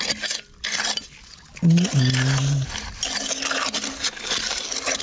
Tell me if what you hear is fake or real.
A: real